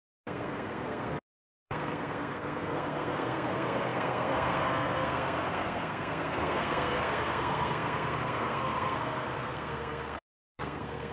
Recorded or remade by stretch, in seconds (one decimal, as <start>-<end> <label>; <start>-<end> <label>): 0.0-11.1 remade